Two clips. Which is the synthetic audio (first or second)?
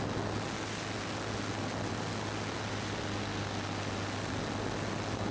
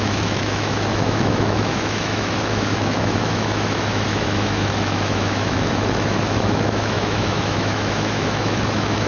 second